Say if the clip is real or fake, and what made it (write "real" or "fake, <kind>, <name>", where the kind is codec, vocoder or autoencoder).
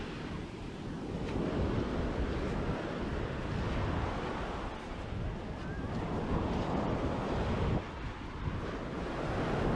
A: real